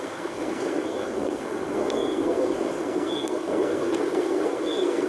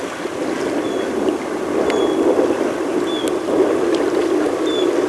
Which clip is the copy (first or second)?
first